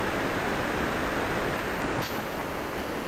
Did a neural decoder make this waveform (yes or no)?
no